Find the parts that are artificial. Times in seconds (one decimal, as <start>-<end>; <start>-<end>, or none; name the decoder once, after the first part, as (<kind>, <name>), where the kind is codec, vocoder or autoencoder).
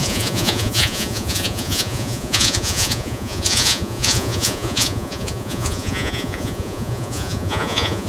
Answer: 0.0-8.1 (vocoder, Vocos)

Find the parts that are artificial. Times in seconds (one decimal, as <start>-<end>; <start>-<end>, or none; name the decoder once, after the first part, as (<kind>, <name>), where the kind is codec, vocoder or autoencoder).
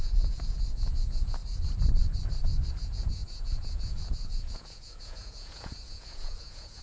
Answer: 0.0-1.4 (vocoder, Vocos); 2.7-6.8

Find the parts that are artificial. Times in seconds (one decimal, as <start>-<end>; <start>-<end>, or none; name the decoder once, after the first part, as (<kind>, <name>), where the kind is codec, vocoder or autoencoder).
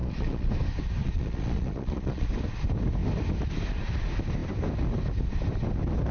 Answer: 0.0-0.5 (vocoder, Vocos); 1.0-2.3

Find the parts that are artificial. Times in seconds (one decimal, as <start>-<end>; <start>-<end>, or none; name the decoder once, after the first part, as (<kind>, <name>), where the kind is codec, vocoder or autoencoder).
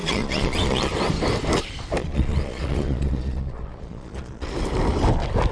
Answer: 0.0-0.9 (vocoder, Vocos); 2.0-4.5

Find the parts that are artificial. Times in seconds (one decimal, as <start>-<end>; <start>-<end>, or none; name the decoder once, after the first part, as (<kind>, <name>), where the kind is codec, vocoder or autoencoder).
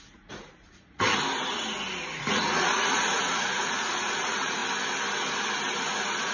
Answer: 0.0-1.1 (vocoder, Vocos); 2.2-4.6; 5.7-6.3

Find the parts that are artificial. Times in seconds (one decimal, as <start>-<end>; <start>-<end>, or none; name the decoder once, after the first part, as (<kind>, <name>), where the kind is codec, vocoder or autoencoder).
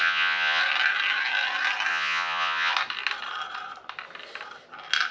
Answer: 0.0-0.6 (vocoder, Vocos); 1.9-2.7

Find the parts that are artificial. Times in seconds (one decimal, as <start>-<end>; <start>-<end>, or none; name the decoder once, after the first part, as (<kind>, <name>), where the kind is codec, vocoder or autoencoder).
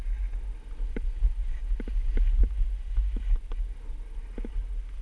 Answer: none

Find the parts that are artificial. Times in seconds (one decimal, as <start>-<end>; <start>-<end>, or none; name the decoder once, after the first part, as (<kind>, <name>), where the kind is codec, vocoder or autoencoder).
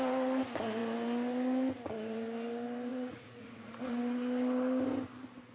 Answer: 2.9-3.7 (vocoder, Vocos)